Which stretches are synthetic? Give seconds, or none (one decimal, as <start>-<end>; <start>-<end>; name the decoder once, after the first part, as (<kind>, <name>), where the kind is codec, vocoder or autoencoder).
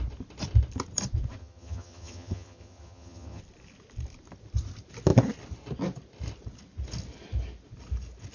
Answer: 1.4-3.4 (vocoder, HiFi-GAN)